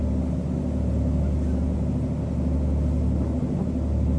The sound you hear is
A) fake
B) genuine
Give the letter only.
B